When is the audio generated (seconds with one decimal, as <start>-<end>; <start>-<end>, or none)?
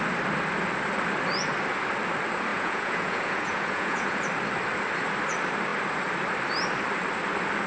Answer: 2.5-4.2